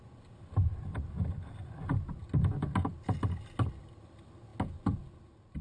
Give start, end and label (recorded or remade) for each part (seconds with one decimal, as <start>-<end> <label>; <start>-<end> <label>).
0.0-5.6 recorded